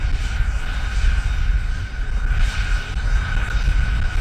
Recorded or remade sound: recorded